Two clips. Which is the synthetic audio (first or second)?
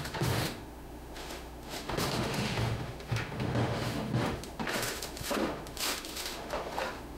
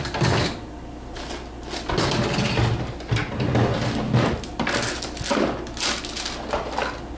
first